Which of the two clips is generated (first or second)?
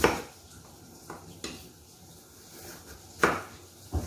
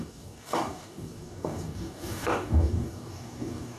second